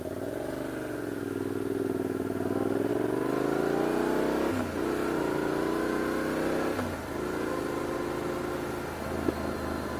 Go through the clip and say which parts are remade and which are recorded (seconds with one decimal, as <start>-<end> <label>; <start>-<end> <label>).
0.0-10.0 recorded